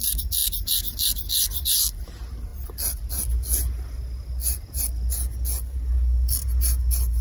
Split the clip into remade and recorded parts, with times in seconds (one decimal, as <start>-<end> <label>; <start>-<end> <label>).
0.0-7.2 recorded